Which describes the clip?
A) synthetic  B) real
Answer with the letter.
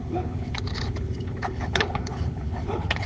A